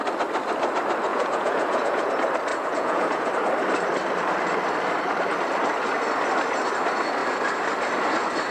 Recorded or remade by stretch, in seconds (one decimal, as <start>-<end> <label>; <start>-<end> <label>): 0.0-1.1 recorded; 1.1-2.1 remade; 2.1-2.5 recorded; 2.5-3.3 remade; 3.3-8.5 recorded